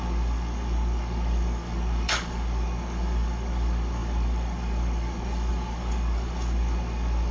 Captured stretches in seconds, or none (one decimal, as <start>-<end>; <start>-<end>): none